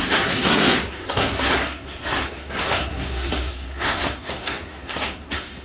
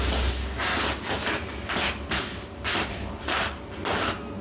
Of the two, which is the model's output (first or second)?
first